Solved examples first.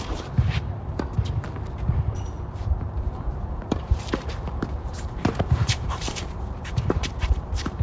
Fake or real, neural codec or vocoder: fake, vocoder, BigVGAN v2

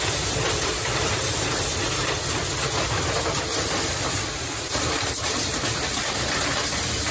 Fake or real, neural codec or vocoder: fake, vocoder, BigVGAN v2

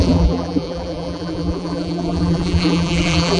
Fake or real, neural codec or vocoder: fake, vocoder, BigVGAN v2